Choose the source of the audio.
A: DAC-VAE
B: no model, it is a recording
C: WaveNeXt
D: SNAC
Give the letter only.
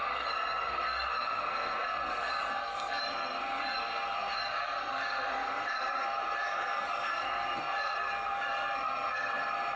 D